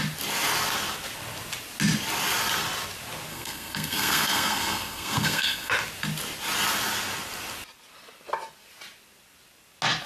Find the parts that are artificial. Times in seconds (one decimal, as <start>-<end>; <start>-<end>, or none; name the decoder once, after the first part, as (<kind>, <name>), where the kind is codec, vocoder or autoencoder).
3.3-5.7 (codec, SNAC)

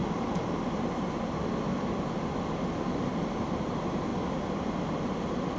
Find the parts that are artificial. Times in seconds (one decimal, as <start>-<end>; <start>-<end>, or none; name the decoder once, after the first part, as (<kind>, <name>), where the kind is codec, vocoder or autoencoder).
none

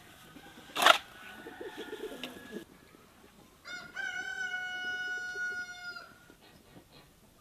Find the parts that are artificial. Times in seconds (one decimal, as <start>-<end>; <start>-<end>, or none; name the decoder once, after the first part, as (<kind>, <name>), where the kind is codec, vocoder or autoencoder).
none

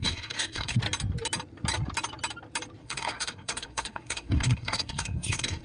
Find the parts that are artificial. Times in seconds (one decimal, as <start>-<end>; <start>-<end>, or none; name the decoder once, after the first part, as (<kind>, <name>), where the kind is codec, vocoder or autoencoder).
0.0-0.8 (codec, SNAC); 2.8-5.6